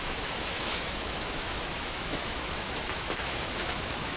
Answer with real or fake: fake